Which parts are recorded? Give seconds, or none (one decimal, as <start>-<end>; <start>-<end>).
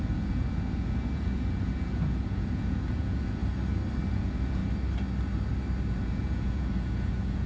3.4-4.1; 4.6-5.9